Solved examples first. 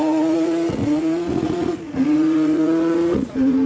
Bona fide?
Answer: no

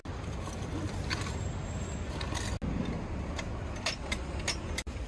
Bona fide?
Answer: yes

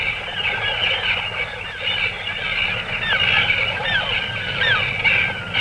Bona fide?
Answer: yes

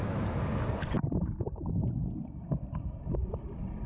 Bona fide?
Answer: yes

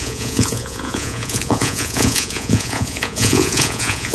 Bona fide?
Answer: no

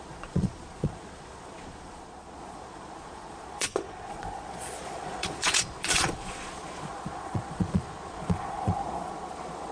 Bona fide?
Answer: no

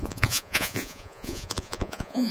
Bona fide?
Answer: no